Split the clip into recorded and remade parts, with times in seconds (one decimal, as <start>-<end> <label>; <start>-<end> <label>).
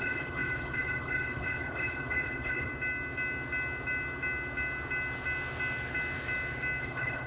0.0-2.7 remade; 2.7-6.8 recorded; 6.8-7.3 remade